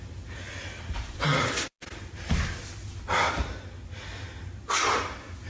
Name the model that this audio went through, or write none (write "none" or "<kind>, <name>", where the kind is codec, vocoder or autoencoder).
none